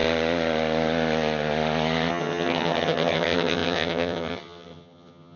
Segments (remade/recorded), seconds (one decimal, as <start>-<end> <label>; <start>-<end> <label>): 0.0-2.1 recorded; 2.1-5.4 remade